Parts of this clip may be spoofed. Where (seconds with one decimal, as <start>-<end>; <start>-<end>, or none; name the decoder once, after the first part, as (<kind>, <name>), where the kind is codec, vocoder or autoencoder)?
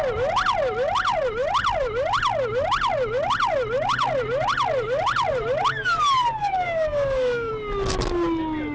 6.4-7.5 (codec, DAC)